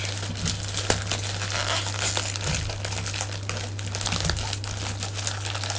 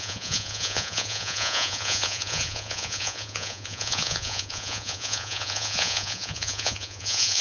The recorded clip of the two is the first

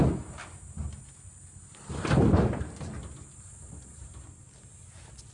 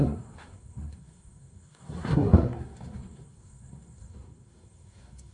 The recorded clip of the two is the first